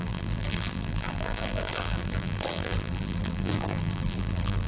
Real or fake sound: fake